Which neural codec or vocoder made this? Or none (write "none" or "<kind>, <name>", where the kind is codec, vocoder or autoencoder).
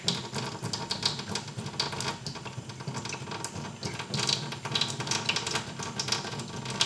none